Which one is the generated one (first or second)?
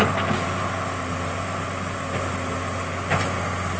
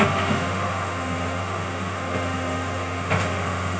second